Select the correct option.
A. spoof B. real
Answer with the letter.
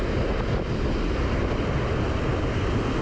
B